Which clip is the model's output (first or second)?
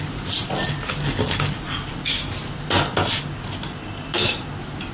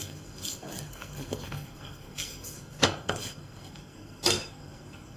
second